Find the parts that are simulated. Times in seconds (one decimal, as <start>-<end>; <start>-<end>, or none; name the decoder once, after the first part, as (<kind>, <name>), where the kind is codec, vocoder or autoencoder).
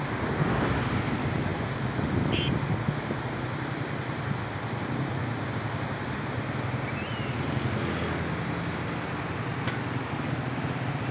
none